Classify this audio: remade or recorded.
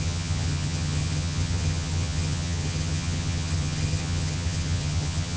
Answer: remade